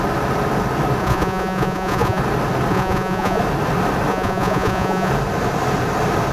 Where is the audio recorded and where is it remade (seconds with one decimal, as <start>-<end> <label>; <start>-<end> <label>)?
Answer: 0.0-1.0 recorded; 1.0-2.2 remade; 2.2-2.7 recorded; 2.7-3.4 remade; 3.4-4.1 recorded; 4.1-5.1 remade; 5.1-6.3 recorded